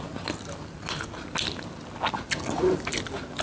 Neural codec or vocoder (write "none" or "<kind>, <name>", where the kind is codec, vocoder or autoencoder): none